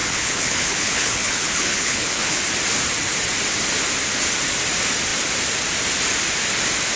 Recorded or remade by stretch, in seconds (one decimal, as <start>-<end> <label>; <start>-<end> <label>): 0.0-2.4 remade; 2.4-7.0 recorded